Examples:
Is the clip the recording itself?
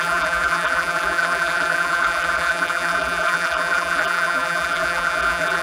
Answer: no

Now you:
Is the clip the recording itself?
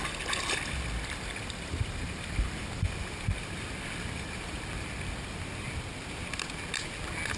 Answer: yes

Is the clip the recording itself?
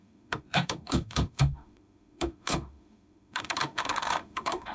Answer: no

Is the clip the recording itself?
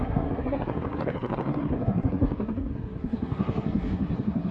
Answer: no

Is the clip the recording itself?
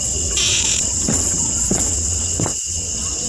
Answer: no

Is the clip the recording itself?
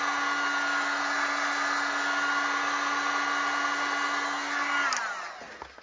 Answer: yes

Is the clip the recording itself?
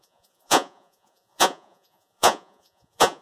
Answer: no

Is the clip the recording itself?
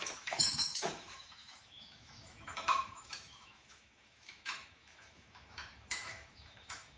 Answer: no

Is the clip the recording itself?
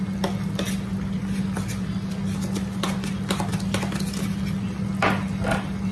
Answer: yes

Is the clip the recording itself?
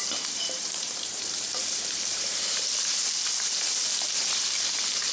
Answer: no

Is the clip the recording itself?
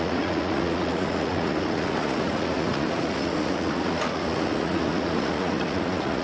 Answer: no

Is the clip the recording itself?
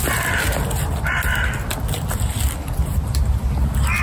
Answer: yes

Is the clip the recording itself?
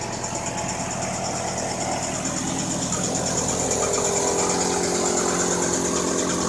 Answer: yes